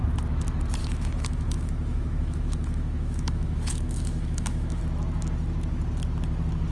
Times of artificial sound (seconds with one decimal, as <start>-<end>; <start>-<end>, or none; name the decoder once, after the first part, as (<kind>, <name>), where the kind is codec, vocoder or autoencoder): 0.8-4.8 (autoencoder, DAC-VAE)